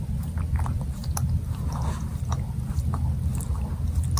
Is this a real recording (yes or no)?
yes